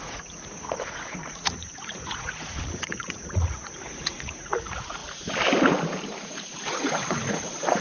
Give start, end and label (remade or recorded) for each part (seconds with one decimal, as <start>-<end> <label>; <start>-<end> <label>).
0.0-5.0 remade; 5.0-6.2 recorded; 6.2-7.8 remade